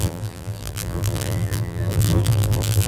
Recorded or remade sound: remade